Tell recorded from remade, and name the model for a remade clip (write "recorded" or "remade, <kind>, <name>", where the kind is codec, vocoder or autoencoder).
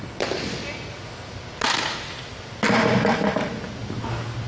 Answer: recorded